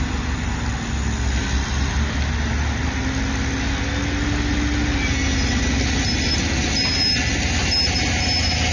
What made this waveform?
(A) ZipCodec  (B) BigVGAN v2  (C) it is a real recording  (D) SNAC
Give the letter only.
C